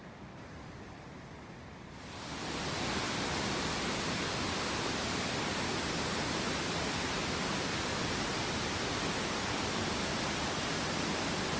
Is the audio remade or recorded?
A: recorded